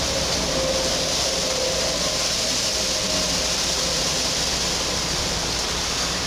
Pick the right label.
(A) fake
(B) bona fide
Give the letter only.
B